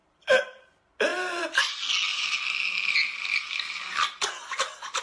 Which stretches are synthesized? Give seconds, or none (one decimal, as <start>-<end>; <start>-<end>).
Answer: 0.0-0.6; 1.1-1.6